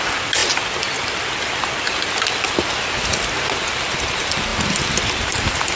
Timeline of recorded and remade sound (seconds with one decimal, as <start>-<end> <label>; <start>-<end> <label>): 0.0-4.5 recorded; 4.5-5.8 remade